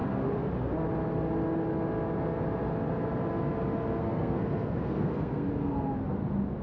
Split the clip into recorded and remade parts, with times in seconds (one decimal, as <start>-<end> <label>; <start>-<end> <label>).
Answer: 0.0-4.0 recorded; 4.0-5.9 remade; 5.9-6.6 recorded